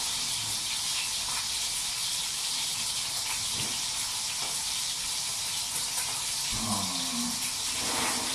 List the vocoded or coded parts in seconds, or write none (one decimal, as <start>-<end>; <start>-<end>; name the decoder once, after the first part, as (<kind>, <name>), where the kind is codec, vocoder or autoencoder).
2.0-2.8 (vocoder, BigVGAN v2); 4.4-5.5